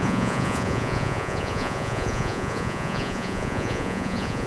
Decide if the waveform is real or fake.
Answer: fake